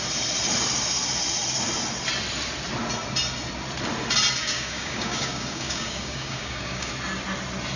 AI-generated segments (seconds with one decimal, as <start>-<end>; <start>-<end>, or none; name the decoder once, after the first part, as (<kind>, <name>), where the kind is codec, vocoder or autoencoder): 4.4-6.9 (codec, DAC)